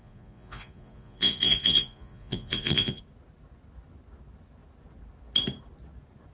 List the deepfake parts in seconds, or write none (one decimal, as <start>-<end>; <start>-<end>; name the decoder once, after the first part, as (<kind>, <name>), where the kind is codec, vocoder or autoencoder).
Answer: 0.0-3.0 (vocoder, Vocos)